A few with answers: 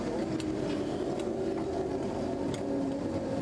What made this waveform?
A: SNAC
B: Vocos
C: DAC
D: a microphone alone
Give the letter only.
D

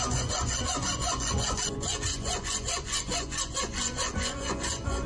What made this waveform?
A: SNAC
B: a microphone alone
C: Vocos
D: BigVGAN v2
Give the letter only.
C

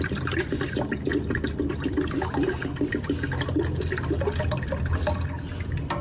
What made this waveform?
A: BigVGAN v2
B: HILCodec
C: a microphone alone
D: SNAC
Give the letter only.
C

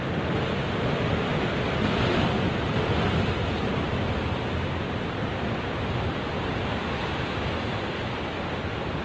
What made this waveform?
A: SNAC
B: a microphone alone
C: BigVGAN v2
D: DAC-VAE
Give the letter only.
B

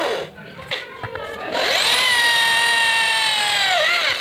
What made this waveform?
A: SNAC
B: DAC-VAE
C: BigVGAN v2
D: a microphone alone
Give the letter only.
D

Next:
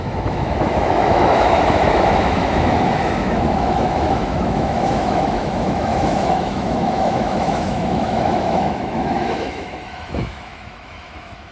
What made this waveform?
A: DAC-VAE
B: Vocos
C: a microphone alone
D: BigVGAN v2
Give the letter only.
A